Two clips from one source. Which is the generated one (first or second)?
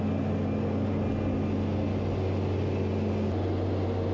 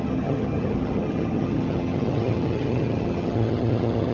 second